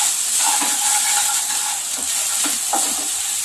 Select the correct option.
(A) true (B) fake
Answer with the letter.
A